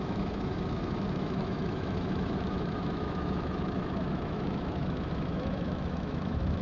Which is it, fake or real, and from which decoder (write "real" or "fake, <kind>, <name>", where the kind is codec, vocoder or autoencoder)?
fake, autoencoder, DAC-VAE